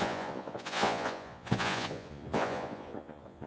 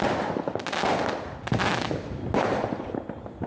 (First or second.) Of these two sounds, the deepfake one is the first